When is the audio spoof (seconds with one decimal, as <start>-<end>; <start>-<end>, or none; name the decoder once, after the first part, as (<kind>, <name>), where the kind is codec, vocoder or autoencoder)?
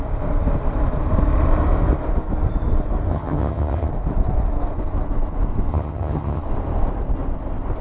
3.1-3.9 (vocoder, HiFi-GAN); 5.7-6.4